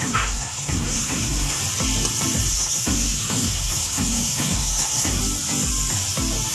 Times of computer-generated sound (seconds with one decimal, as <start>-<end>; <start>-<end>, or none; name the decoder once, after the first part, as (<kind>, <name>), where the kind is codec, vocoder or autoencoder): 0.0-1.6 (codec, SNAC); 2.5-5.2